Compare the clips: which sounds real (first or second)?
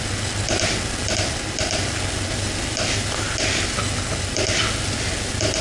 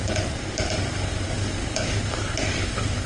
first